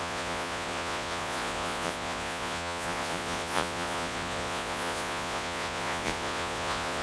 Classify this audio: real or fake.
fake